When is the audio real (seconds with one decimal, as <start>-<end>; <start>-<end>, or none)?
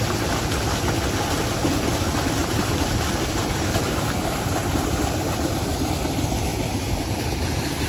0.0-2.4; 5.7-6.5